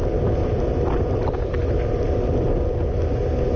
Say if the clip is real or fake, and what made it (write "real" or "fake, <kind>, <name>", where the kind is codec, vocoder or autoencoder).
real